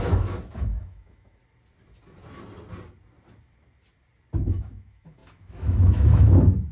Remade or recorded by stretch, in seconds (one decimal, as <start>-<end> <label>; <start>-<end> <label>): 0.0-1.4 remade; 1.4-4.4 recorded; 4.4-6.7 remade